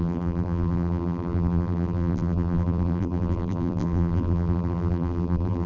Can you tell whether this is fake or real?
fake